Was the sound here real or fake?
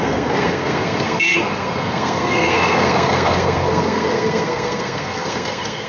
fake